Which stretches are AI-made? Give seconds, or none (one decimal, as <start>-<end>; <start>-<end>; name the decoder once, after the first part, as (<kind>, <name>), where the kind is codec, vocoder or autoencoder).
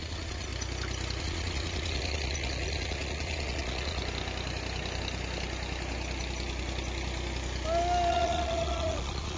0.0-0.5 (vocoder, Vocos); 1.2-4.0; 8.1-9.4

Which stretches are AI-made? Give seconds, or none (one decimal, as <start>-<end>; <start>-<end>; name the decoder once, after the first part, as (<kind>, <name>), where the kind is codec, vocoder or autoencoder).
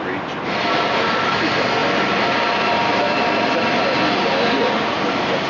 none